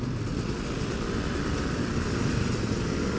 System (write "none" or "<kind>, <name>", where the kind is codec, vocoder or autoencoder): none